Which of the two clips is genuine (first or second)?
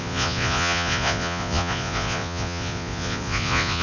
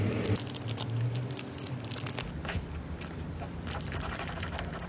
second